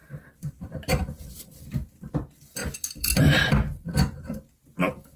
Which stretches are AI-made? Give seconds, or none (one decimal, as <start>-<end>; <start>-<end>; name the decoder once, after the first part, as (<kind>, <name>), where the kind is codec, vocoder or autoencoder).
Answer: 0.0-5.2 (vocoder, BigVGAN v2)